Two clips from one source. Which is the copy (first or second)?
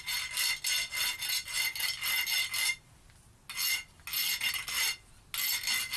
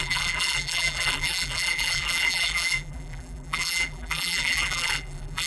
second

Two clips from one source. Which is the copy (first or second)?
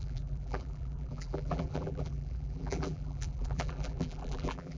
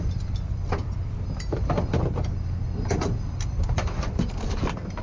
first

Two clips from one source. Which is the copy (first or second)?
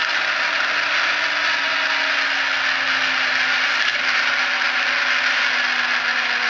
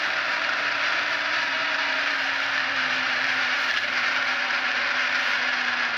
second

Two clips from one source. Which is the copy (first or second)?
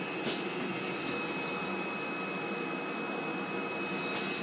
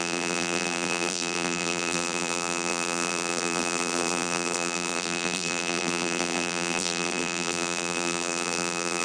second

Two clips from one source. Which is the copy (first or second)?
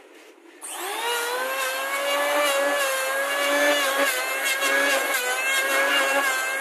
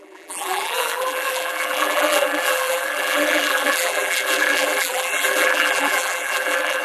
second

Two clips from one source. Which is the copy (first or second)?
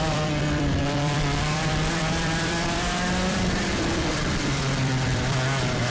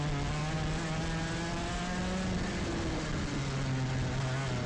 first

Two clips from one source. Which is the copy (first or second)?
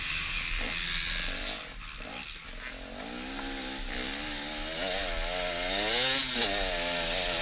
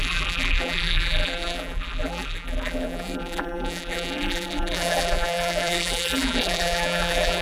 second